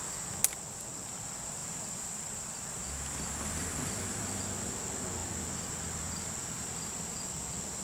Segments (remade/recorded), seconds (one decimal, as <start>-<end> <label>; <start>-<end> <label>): 0.0-1.6 recorded; 1.6-4.4 remade; 4.4-5.2 recorded; 5.2-6.1 remade; 6.1-7.8 recorded